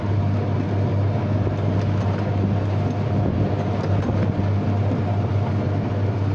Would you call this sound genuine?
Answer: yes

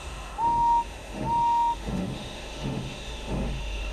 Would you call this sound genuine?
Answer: no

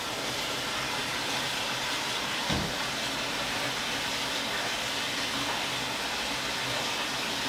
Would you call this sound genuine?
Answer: yes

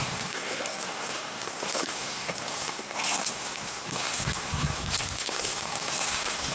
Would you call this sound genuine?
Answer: no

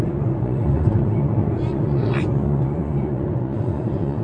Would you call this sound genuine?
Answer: no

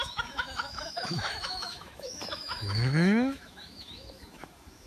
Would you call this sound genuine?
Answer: no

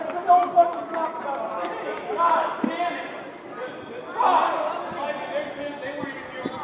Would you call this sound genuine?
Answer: yes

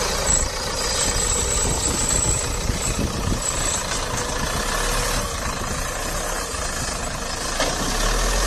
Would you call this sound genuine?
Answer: yes